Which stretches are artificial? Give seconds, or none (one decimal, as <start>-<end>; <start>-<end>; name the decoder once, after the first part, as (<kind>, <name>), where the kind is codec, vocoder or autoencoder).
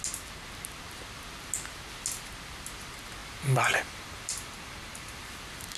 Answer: 3.2-5.3 (vocoder, BigVGAN v2)